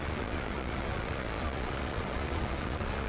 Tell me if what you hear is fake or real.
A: fake